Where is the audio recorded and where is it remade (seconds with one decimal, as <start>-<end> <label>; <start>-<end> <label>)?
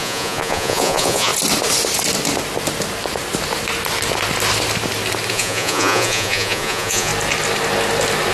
0.0-1.3 remade; 1.3-5.3 recorded; 5.3-7.1 remade; 7.1-8.3 recorded